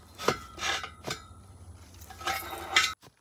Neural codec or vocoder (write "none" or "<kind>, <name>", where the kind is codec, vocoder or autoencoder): none